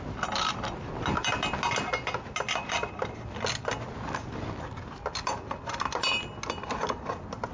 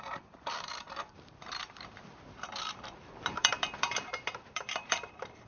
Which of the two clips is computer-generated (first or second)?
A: second